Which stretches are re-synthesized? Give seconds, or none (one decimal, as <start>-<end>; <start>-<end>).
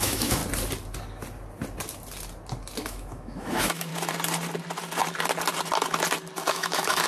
0.0-0.4; 2.8-3.9; 6.5-7.1